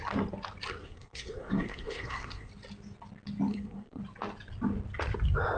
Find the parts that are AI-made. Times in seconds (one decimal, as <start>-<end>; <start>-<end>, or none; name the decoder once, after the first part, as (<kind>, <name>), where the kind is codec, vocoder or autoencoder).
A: 0.8-2.5 (codec, SNAC); 3.5-4.0